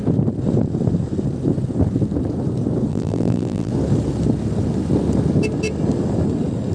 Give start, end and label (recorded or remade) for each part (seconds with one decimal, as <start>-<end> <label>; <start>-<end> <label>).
0.0-2.9 recorded; 2.9-3.7 remade; 3.7-6.7 recorded